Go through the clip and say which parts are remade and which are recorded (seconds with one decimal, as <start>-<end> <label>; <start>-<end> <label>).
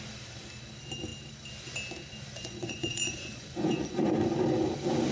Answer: 0.0-2.4 recorded; 2.4-4.1 remade; 4.1-5.1 recorded